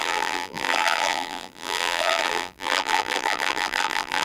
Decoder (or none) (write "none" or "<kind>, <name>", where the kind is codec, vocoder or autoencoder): vocoder, BigVGAN v2